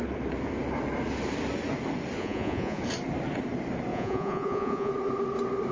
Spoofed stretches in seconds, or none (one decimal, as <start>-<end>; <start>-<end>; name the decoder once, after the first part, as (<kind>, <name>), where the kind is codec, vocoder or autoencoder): 2.2-2.8 (vocoder, Vocos); 3.9-4.9